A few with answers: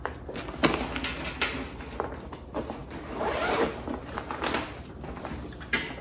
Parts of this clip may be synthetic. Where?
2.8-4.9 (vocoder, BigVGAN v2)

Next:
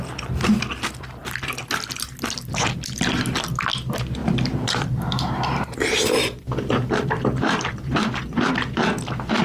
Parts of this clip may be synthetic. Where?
4.2-8.5 (vocoder, BigVGAN v2)

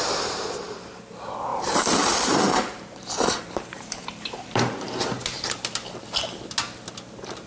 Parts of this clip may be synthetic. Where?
1.5-5.0 (vocoder, BigVGAN v2)

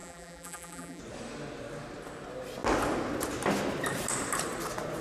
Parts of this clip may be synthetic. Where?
0.0-1.0 (vocoder, BigVGAN v2)

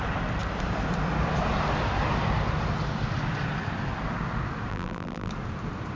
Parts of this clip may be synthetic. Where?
4.7-5.3 (vocoder, BigVGAN v2)

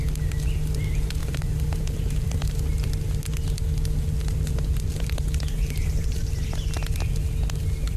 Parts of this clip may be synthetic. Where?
1.2-2.6 (vocoder, BigVGAN v2); 4.9-6.2